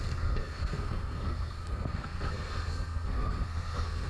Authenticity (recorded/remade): remade